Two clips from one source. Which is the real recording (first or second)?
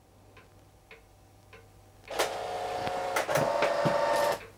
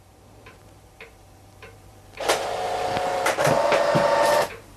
first